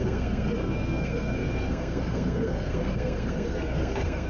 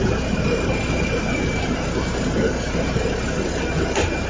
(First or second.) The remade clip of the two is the first